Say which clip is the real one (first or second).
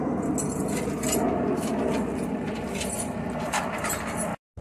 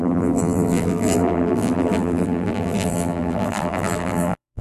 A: first